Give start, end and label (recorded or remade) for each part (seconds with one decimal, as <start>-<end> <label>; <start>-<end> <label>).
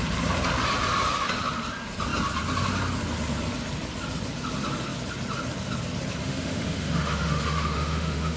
0.0-6.2 recorded; 6.2-8.4 remade